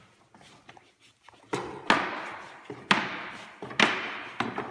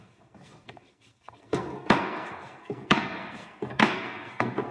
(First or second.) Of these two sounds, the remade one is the second